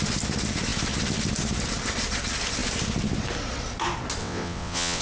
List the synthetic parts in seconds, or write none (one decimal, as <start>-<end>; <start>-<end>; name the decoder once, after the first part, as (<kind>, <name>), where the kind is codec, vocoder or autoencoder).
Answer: 4.2-5.0 (vocoder, WaveNeXt)